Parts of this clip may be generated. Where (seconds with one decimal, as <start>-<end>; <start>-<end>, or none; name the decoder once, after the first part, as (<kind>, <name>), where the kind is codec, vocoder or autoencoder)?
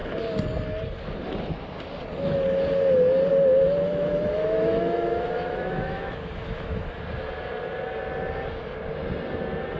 3.9-6.9 (autoencoder, DAC-VAE)